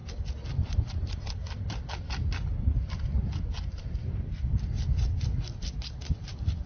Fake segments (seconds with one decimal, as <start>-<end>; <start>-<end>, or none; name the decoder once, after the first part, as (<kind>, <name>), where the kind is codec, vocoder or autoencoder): none